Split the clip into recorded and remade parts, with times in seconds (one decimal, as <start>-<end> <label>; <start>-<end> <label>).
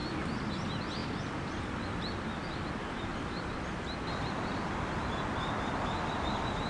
0.0-1.0 recorded; 1.0-1.5 remade; 1.5-3.1 recorded; 3.1-6.3 remade; 6.3-6.7 recorded